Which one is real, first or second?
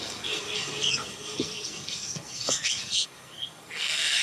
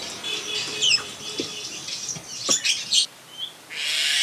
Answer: second